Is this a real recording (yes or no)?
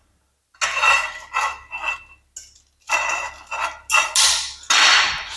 yes